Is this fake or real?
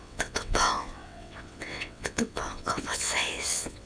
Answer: fake